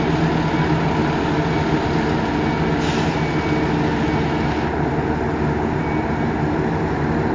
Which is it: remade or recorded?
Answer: recorded